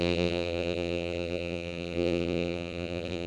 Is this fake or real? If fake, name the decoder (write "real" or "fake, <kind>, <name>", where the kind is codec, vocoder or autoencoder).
fake, vocoder, BigVGAN v2